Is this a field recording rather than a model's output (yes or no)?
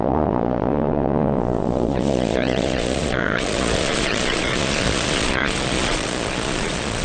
no